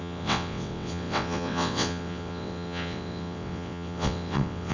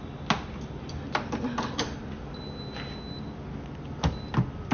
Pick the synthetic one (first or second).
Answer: first